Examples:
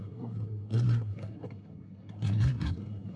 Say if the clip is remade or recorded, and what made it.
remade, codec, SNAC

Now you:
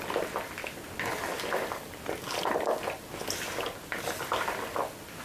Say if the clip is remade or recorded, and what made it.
recorded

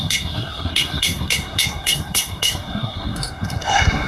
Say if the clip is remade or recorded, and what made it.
remade, codec, SNAC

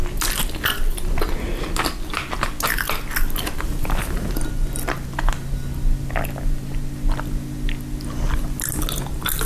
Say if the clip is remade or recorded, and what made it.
recorded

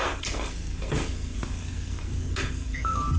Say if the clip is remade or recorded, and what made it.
remade, codec, SNAC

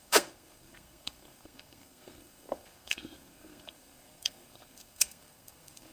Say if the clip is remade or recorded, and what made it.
remade, codec, SNAC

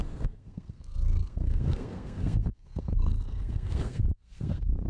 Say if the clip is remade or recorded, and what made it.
remade, codec, SNAC